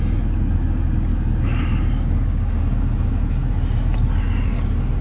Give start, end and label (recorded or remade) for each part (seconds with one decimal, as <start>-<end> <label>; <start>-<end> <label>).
0.0-1.1 recorded; 1.1-3.2 remade; 3.2-5.0 recorded